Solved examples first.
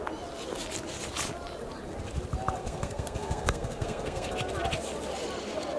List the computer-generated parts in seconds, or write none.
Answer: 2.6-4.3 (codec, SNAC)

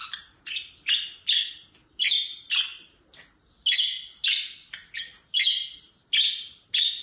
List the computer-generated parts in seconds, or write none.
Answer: none

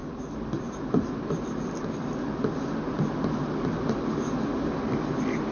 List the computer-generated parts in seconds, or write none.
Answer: none